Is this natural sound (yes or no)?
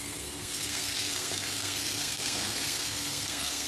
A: no